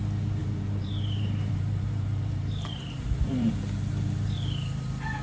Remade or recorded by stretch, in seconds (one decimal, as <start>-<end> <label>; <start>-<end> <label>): 0.0-0.4 recorded; 0.4-3.5 remade; 3.5-5.2 recorded